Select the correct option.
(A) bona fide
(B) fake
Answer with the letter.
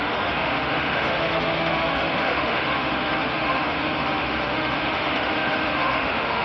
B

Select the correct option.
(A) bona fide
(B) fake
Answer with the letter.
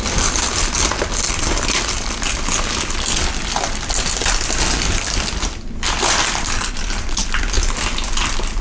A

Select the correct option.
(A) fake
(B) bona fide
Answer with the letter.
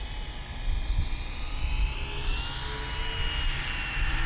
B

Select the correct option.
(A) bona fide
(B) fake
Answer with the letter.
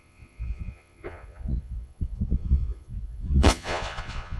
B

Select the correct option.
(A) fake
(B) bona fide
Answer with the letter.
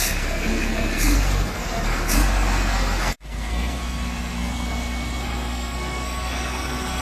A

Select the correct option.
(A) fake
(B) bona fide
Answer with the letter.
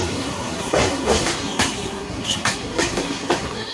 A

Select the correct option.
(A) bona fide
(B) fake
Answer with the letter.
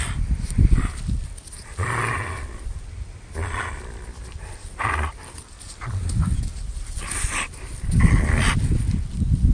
A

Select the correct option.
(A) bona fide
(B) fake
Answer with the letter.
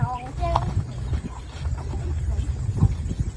A